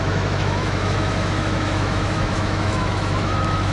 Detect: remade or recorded remade